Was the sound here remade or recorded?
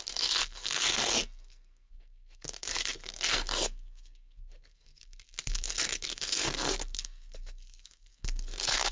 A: remade